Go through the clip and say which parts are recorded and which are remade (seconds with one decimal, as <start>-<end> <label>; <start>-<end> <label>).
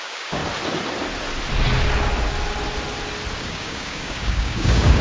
0.0-0.4 remade; 0.4-3.4 recorded; 3.4-5.0 remade